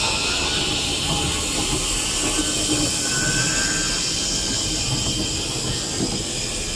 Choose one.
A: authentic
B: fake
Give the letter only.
A